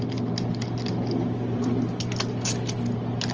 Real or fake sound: real